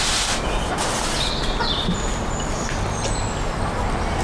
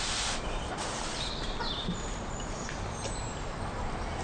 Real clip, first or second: first